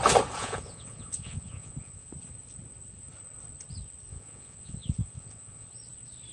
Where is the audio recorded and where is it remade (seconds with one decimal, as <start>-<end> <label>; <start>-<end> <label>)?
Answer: 0.0-0.4 recorded; 0.4-2.1 remade; 2.1-4.1 recorded; 4.1-5.7 remade; 5.7-6.3 recorded

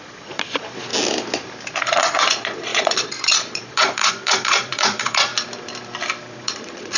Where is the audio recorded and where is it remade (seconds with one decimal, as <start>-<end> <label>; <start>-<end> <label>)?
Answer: 0.0-0.9 remade; 0.9-1.8 recorded; 1.8-5.3 remade; 5.3-6.3 recorded; 6.3-7.0 remade

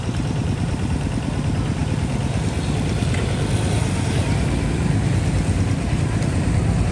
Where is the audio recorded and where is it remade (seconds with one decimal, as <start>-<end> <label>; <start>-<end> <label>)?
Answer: 0.0-6.9 recorded

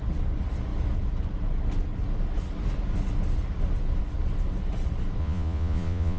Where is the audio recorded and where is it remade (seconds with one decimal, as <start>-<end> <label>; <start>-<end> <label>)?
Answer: 0.0-5.2 recorded; 5.2-6.2 remade

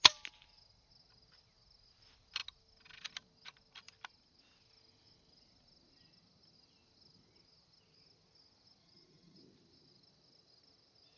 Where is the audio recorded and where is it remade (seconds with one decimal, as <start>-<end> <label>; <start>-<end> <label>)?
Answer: 0.0-8.8 recorded; 8.8-9.4 remade; 9.4-11.2 recorded

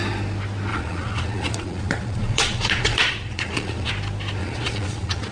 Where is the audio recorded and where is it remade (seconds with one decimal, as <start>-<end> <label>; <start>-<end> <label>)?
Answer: 0.0-0.7 recorded; 0.7-3.9 remade; 3.9-4.4 recorded; 4.4-5.3 remade